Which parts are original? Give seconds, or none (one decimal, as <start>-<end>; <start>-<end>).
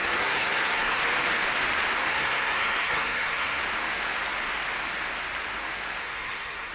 1.0-2.1; 3.6-6.0